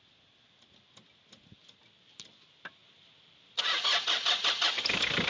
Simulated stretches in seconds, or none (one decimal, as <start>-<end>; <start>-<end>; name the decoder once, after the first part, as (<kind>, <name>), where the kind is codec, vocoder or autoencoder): none